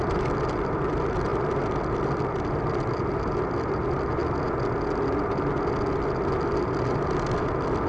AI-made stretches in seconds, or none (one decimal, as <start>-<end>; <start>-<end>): none